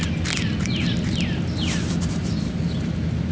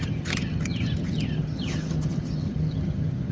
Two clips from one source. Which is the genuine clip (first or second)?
first